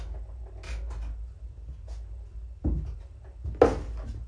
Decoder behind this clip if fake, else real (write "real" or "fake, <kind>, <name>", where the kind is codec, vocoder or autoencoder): real